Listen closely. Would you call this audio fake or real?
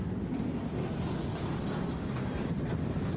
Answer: real